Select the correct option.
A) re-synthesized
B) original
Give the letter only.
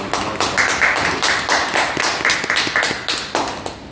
B